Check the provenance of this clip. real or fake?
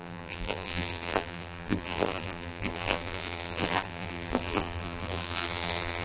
fake